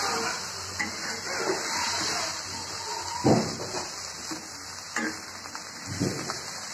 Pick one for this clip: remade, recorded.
recorded